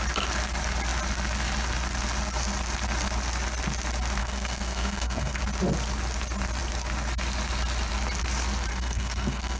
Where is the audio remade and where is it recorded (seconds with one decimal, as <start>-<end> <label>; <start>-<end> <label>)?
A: 0.0-4.2 recorded; 4.2-5.4 remade; 5.4-8.7 recorded; 8.7-9.6 remade